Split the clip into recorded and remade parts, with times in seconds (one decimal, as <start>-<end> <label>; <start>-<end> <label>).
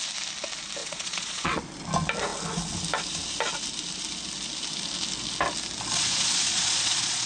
0.0-0.8 recorded; 0.8-1.6 remade; 1.6-6.0 recorded; 6.0-7.3 remade